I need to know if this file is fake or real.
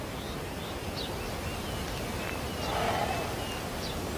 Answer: real